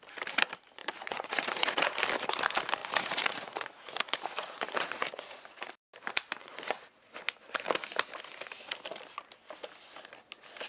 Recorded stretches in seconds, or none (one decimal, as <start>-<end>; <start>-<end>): 0.0-0.8; 2.0-2.8; 5.7-6.4; 7.1-10.7